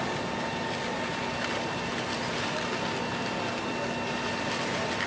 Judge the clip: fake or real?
real